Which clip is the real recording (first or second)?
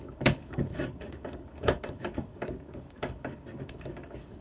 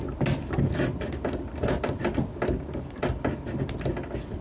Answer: second